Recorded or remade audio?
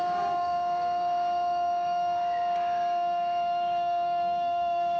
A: remade